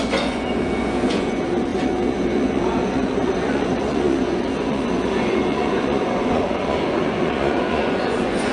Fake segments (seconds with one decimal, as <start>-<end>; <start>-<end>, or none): 0.0-8.5